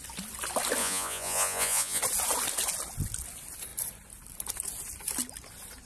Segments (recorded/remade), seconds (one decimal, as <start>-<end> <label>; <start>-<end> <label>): 0.0-0.8 recorded; 0.8-2.0 remade; 2.0-5.9 recorded